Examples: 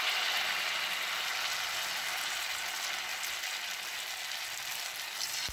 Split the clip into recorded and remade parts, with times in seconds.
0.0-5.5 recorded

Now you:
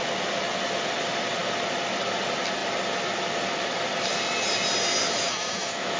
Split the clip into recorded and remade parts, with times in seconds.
0.0-5.0 recorded; 5.0-6.0 remade

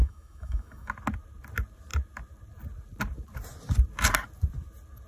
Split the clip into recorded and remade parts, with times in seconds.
0.0-0.9 remade; 0.9-5.1 recorded

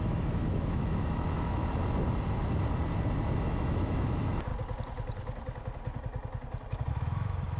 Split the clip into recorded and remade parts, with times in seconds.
0.0-1.6 remade; 1.6-3.4 recorded; 3.4-4.5 remade; 4.5-6.9 recorded; 6.9-7.6 remade

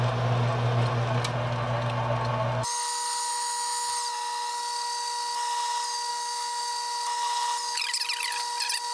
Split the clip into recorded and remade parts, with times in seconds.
0.0-3.3 recorded; 3.3-3.9 remade; 3.9-6.1 recorded; 6.1-6.7 remade; 6.7-8.9 recorded